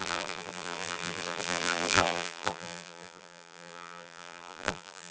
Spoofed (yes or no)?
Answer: yes